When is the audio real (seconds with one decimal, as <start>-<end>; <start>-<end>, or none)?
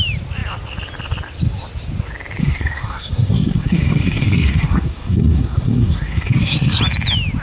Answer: 0.0-2.4; 6.8-7.4